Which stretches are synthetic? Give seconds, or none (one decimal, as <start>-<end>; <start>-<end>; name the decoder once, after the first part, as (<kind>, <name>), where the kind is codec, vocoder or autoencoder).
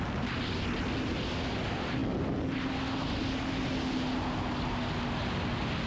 none